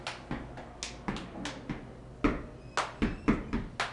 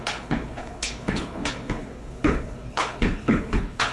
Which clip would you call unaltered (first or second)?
first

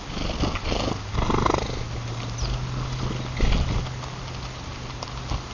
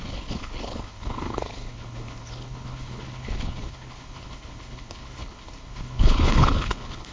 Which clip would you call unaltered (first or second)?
first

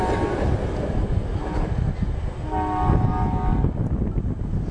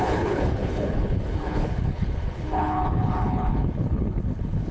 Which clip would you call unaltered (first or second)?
first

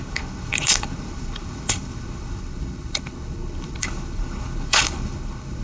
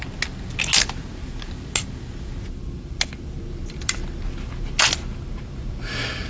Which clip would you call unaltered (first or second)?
second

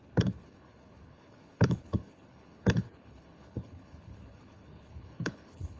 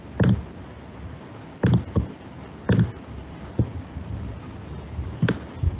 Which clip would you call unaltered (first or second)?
second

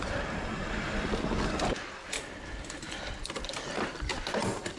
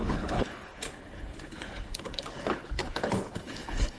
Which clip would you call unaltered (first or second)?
first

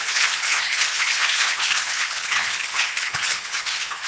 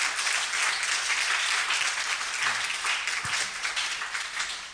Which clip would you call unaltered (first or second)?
second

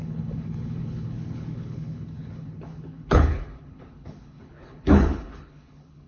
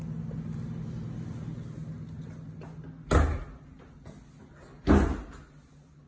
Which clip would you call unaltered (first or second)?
second